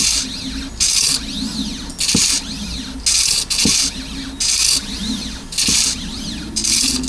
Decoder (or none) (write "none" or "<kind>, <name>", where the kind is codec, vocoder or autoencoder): none